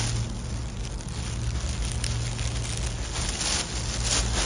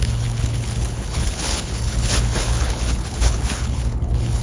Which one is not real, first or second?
second